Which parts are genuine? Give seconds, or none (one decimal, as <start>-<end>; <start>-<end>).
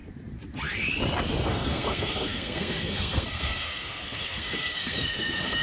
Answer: 0.0-1.5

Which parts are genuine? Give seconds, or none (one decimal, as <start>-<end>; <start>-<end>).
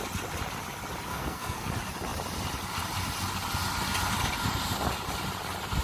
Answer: 0.0-1.1; 1.7-5.8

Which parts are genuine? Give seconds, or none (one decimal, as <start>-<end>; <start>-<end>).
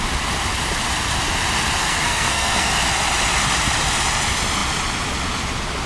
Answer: 0.0-1.8; 2.7-5.9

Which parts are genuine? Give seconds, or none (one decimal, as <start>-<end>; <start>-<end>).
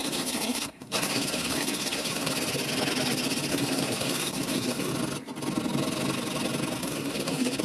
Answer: 2.3-3.5; 4.9-6.8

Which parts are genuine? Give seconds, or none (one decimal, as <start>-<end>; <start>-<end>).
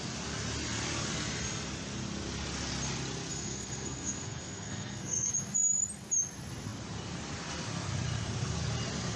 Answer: 0.0-3.3; 5.3-9.2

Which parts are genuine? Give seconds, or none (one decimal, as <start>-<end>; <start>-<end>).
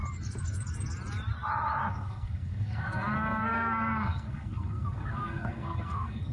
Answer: 0.0-1.9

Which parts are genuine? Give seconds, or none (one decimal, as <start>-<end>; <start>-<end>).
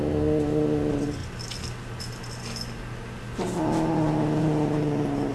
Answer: 0.0-5.3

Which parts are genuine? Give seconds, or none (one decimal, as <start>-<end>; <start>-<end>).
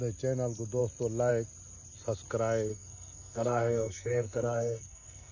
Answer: 0.0-2.7